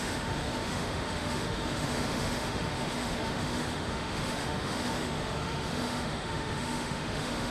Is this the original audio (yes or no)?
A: no